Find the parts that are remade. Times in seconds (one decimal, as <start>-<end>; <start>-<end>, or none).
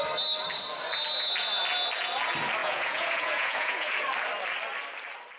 2.6-3.9